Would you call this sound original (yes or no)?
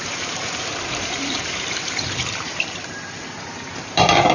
no